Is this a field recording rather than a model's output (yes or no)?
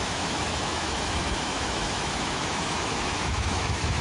no